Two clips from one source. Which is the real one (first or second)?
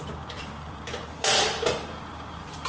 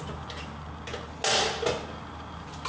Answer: second